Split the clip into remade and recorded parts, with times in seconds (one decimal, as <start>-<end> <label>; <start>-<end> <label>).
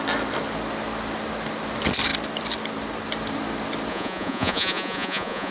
0.0-3.9 recorded; 3.9-5.5 remade